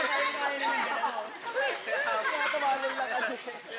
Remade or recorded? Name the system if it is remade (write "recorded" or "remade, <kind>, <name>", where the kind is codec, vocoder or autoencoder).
recorded